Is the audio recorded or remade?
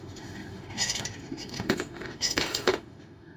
remade